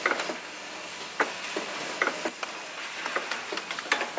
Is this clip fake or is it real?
real